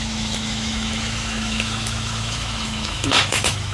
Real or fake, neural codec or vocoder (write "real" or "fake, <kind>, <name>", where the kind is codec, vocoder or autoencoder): fake, autoencoder, DAC-VAE